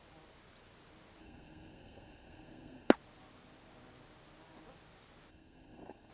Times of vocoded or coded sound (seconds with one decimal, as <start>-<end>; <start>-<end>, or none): 1.2-2.9; 5.3-6.1